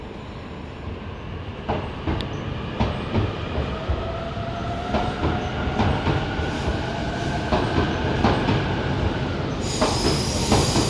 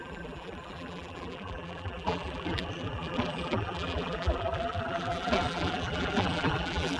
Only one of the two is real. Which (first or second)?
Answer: first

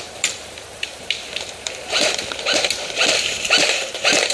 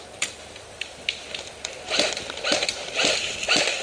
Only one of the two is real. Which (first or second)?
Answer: second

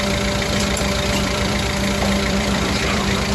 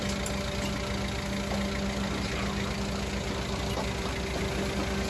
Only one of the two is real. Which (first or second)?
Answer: second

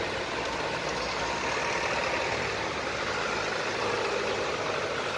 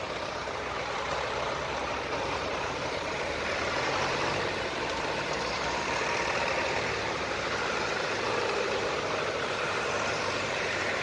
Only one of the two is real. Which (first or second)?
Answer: first